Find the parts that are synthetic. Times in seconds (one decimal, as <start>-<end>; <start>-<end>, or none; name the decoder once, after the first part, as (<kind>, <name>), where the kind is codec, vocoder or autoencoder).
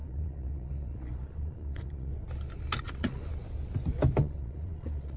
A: 0.0-2.1 (vocoder, Vocos); 2.8-3.3; 4.2-5.2